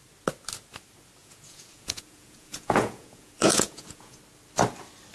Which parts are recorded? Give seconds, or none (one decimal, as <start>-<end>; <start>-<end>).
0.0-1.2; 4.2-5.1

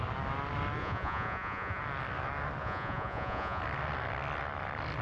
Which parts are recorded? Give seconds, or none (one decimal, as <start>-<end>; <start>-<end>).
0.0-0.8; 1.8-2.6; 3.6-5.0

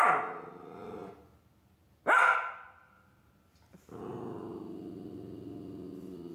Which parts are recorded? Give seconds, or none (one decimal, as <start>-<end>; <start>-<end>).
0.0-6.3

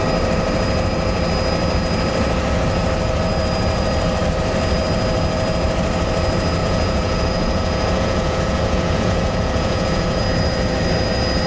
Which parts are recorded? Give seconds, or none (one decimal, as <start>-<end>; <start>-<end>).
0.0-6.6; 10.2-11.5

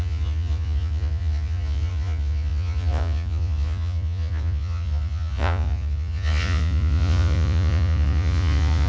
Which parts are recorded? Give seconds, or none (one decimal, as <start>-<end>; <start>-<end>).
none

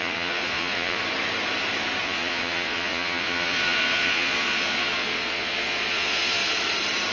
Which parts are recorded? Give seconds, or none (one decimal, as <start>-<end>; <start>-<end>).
1.0-2.0; 6.4-7.1

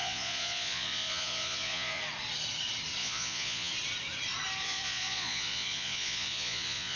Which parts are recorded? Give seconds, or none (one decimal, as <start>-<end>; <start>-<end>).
2.0-3.0; 3.7-4.6

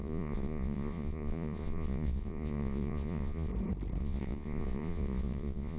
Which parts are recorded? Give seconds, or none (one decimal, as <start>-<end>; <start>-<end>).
3.5-4.0